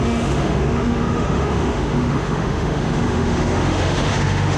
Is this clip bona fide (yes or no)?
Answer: no